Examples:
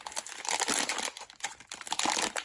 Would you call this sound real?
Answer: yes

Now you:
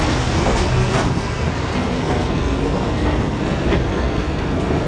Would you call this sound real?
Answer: no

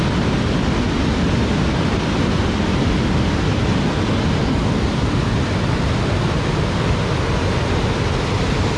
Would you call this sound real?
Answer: yes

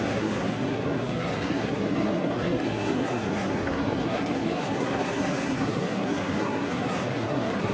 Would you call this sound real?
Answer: no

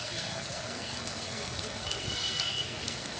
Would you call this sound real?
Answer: no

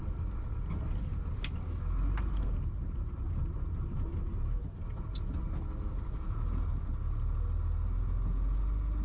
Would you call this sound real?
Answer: yes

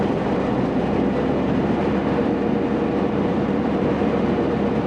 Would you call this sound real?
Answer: yes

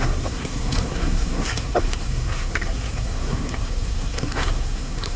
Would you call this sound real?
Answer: no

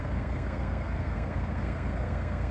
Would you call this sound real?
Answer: no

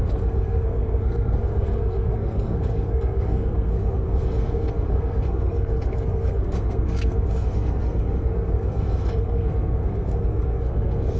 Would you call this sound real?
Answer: no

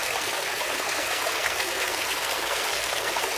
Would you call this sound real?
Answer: no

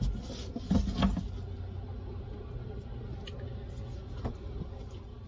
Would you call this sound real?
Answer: yes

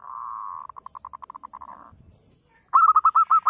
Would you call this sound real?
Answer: yes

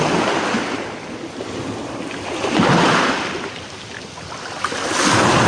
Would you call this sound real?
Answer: yes